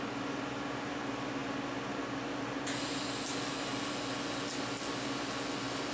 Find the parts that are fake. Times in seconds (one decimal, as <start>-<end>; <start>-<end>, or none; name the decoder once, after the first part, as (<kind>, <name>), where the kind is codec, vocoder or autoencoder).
none